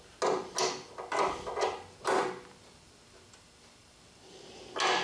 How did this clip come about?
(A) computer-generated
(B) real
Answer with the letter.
B